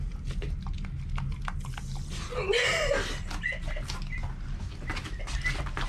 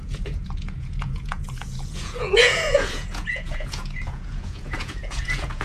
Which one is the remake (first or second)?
second